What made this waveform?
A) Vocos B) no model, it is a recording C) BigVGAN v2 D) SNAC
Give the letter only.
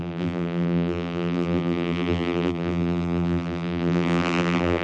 C